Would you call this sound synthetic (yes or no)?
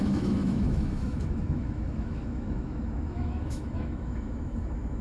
yes